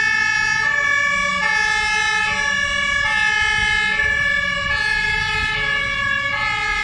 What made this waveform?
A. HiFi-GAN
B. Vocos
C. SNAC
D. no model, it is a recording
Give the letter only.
D